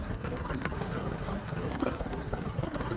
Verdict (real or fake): fake